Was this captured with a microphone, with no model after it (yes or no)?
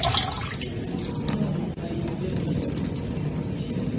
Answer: yes